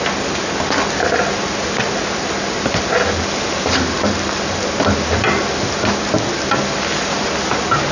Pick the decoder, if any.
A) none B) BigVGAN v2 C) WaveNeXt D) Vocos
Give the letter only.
A